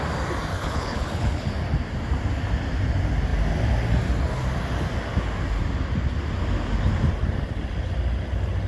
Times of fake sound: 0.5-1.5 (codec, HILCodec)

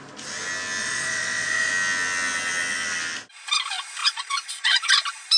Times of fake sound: 0.8-1.7 (vocoder, Vocos); 4.0-4.9

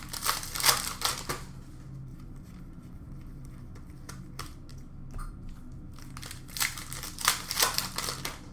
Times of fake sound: 2.1-3.5 (vocoder, BigVGAN v2)

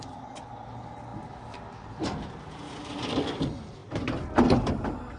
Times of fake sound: none